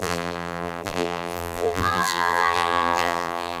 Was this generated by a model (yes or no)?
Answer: yes